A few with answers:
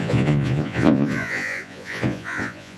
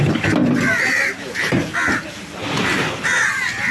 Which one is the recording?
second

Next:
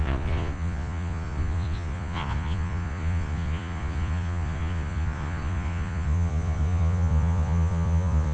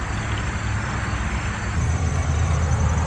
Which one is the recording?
second